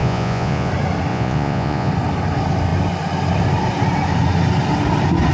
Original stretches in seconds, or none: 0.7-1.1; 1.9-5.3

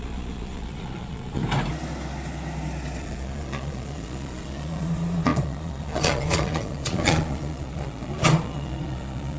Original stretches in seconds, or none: 1.4-3.0

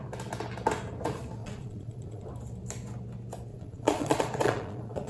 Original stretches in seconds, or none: 0.0-1.4; 2.3-3.5